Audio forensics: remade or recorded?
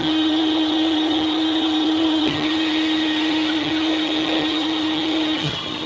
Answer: remade